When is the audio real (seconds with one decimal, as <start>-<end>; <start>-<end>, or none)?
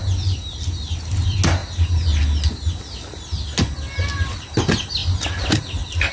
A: 0.0-6.1